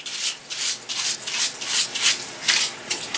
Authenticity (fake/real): real